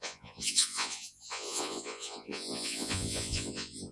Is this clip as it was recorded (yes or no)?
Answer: no